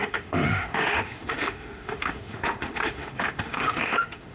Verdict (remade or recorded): remade